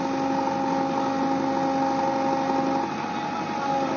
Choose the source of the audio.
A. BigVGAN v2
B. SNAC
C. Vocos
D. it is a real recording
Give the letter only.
D